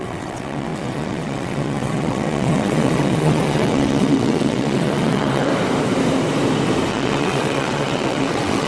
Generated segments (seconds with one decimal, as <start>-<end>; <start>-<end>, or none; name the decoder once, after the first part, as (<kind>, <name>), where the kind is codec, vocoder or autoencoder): 0.0-5.5 (vocoder, WaveNeXt); 6.9-8.7